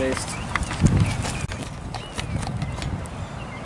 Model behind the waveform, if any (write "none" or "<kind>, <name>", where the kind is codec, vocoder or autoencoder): none